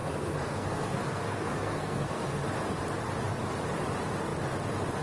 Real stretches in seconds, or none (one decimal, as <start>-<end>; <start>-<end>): 2.4-5.0